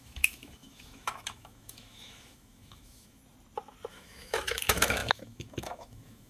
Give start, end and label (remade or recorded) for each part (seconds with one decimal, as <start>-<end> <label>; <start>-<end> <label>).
0.0-3.2 remade; 3.2-3.9 recorded; 3.9-6.3 remade